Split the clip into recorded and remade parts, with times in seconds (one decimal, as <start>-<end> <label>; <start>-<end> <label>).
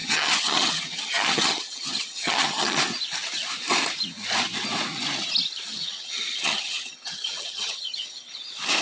0.0-2.8 remade; 2.8-5.7 recorded; 5.7-8.4 remade; 8.4-8.8 recorded